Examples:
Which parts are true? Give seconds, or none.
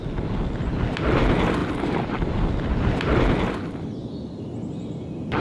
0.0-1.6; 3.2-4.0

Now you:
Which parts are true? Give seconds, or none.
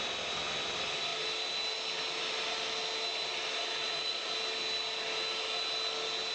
0.0-3.8; 4.3-6.3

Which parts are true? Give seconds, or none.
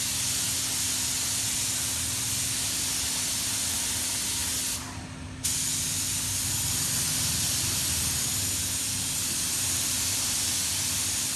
0.0-11.4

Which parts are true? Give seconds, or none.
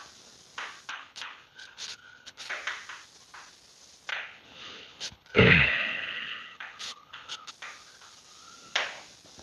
0.0-0.9; 2.5-4.1; 7.5-9.4